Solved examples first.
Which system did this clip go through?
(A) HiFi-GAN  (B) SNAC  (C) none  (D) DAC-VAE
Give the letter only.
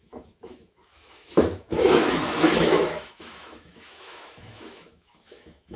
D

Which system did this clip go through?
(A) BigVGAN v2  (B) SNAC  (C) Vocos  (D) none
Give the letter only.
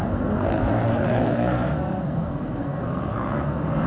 B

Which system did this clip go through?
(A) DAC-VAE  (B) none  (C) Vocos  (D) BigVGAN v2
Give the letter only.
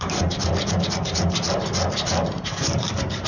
D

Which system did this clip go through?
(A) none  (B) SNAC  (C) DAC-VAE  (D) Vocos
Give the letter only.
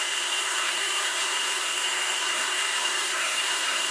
B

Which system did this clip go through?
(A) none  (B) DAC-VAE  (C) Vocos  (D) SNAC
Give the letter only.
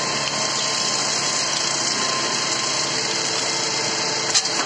A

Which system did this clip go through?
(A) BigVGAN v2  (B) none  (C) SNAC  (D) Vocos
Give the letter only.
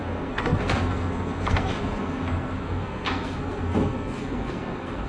C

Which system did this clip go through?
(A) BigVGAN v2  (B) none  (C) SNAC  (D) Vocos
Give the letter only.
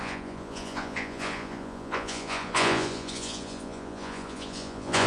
D